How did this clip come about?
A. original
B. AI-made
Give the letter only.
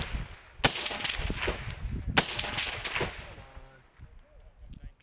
A